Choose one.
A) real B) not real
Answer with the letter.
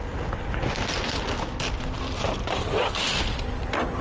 A